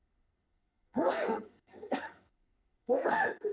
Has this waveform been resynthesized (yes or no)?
yes